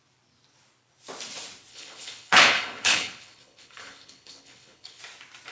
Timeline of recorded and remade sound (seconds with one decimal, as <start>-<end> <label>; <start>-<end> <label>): 0.0-1.7 recorded; 1.7-5.0 remade; 5.0-5.5 recorded